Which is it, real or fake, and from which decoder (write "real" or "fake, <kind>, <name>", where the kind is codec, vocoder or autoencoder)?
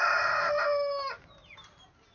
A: real